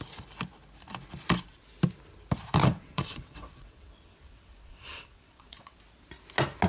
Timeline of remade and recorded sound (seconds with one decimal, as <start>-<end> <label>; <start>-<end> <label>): 0.0-2.6 recorded; 2.6-5.8 remade; 5.8-6.7 recorded